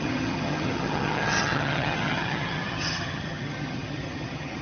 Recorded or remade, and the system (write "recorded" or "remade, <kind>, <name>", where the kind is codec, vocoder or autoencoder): remade, vocoder, HiFi-GAN